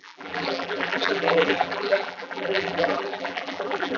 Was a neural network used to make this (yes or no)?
yes